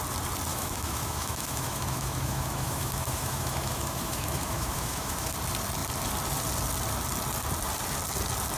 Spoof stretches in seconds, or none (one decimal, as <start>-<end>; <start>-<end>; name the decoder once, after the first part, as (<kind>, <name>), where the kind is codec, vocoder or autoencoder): 0.5-5.3 (autoencoder, DAC-VAE)